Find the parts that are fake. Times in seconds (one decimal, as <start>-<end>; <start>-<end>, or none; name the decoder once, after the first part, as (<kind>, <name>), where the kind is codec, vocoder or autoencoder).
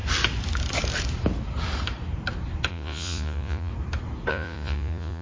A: 2.7-3.7 (vocoder, Vocos); 4.3-5.2